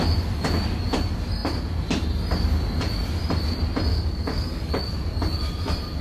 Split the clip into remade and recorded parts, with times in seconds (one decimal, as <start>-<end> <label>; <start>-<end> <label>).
0.0-3.9 recorded; 3.9-4.7 remade; 4.7-6.0 recorded